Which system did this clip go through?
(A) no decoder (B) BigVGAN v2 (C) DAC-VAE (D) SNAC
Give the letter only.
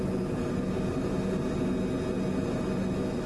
A